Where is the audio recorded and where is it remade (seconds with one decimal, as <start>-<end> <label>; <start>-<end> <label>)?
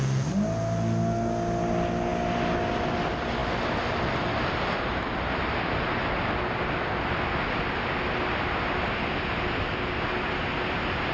0.0-11.1 recorded